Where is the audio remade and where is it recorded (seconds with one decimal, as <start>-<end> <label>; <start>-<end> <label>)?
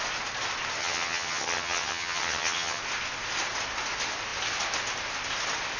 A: 0.0-0.8 recorded; 0.8-2.8 remade; 2.8-5.8 recorded